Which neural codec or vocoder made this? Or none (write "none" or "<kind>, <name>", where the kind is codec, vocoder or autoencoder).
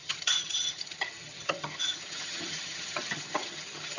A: vocoder, HiFi-GAN